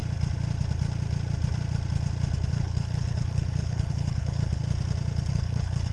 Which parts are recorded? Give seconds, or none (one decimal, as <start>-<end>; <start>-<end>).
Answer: 0.0-2.5; 4.6-5.3